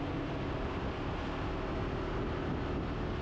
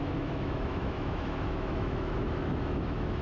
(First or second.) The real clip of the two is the first